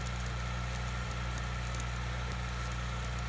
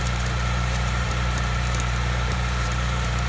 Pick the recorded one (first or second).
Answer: first